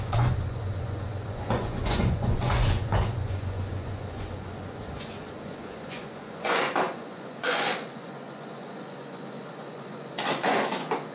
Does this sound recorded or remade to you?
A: remade